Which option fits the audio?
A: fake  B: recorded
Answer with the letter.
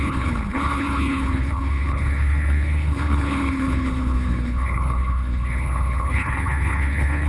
A